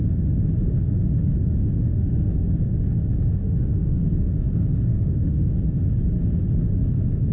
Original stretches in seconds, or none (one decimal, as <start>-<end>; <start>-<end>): 0.0-1.6; 2.3-3.3; 4.1-4.9; 5.6-7.3